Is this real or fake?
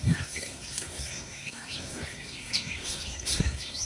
fake